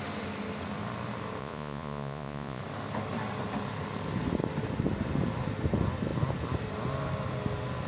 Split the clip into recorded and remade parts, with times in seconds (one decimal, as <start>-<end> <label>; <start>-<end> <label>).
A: 0.0-1.4 recorded; 1.4-2.6 remade; 2.6-7.9 recorded